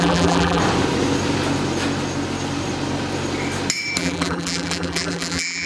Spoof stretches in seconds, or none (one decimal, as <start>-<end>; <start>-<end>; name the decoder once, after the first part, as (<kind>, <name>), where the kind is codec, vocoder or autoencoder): 0.0-0.6 (vocoder, BigVGAN v2); 4.0-5.7